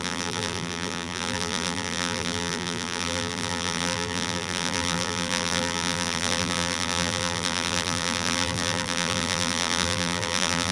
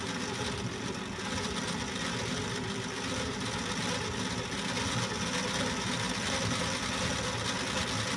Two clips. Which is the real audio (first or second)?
second